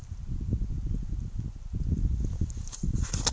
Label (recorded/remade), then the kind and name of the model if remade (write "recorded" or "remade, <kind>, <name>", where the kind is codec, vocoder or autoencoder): recorded